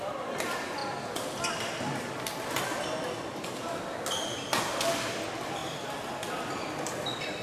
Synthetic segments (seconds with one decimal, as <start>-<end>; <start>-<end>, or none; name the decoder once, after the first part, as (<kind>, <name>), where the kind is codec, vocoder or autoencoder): none